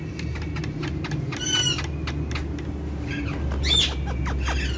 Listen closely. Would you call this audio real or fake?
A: real